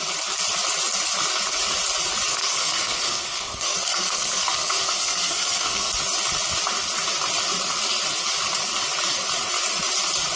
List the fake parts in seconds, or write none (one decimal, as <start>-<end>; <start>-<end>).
2.3-5.9